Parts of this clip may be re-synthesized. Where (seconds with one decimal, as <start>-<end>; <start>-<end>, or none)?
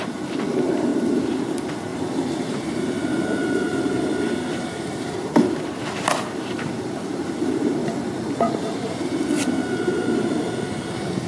0.0-7.8; 8.4-11.3